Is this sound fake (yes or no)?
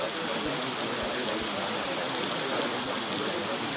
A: no